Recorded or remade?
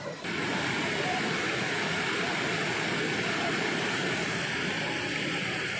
recorded